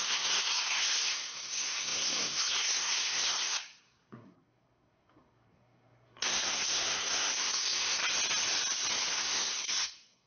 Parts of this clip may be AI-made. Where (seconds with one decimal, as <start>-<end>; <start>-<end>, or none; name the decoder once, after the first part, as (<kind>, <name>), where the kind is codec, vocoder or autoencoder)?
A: 0.0-8.0 (codec, SNAC); 9.1-10.3